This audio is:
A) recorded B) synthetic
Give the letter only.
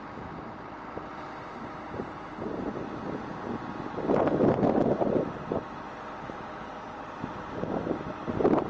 A